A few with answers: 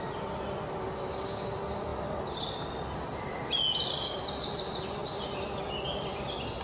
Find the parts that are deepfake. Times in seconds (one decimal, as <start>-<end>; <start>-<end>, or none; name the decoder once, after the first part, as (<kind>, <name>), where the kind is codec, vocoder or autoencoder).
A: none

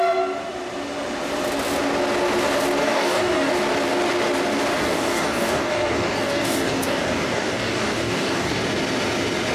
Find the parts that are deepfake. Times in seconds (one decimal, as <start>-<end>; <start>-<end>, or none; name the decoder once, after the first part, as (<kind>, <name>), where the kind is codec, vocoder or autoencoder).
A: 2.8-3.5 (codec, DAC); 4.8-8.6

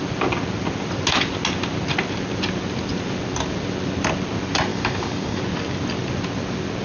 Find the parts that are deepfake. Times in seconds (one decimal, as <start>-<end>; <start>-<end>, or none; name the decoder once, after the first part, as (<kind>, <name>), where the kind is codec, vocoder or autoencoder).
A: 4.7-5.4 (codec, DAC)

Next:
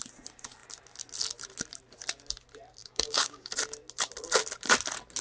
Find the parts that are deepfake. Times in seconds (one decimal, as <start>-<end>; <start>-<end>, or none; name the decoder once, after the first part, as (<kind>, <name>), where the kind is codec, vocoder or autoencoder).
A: 2.8-3.5 (codec, DAC)

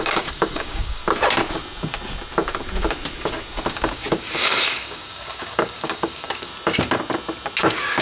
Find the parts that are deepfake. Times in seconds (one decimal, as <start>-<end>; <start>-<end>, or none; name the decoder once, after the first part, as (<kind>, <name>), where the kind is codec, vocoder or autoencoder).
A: 0.0-1.0 (codec, DAC); 3.7-6.5; 7.6-8.0

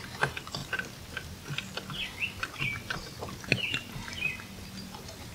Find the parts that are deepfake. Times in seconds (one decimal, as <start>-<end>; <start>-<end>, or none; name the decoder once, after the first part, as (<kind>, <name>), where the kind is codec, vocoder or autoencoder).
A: none

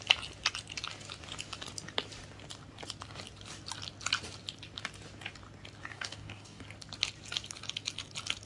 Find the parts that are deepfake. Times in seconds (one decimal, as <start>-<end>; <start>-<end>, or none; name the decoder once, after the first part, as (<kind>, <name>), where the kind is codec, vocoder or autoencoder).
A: 5.9-6.6 (codec, DAC)